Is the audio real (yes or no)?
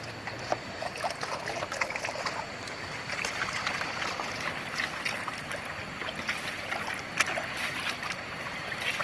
yes